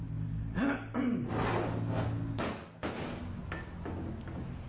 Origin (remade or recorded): recorded